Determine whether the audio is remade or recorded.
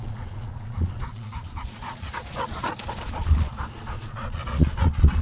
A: remade